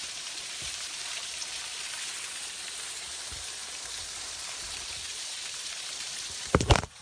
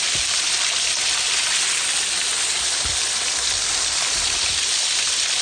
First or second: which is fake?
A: first